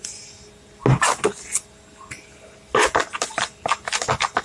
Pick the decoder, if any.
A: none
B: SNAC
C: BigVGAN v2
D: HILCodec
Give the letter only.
A